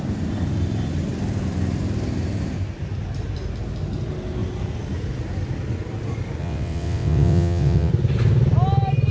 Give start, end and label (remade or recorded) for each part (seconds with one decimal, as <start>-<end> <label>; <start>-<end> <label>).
0.0-6.4 recorded; 6.4-7.9 remade; 7.9-9.1 recorded